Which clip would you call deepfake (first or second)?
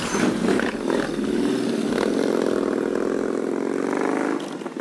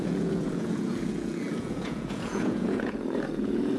second